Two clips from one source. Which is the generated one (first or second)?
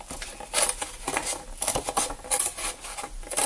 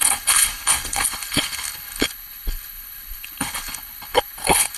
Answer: second